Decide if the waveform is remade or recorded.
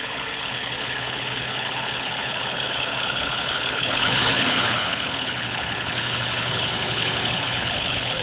remade